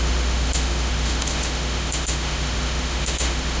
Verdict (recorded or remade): remade